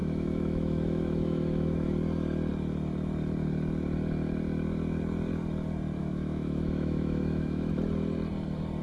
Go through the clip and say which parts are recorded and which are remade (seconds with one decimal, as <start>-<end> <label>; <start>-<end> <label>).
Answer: 0.0-1.9 remade; 1.9-6.0 recorded; 6.0-7.7 remade; 7.7-8.8 recorded